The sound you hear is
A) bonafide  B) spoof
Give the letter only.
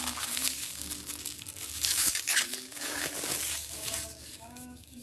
B